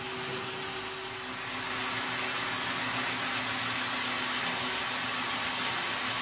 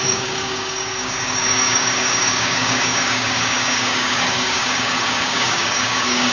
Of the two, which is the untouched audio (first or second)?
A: first